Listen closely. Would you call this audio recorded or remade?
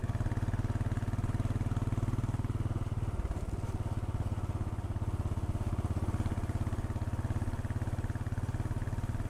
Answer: recorded